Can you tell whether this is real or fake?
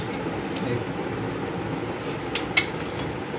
real